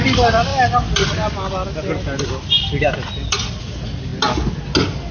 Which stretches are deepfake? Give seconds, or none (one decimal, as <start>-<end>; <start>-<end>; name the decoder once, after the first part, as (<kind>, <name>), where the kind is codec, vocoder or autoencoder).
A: 0.0-0.5 (vocoder, BigVGAN v2); 3.6-4.1